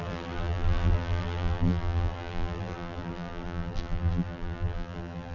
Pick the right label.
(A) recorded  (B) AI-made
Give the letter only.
B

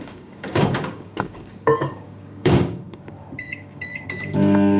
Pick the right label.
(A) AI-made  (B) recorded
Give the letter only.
A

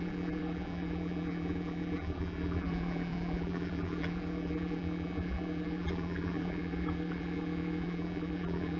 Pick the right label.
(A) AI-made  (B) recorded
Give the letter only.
A